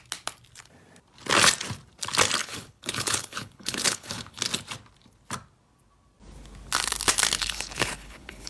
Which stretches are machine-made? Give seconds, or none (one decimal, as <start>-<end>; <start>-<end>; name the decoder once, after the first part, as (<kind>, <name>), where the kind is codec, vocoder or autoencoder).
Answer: 2.4-4.4 (codec, HILCodec); 7.4-8.5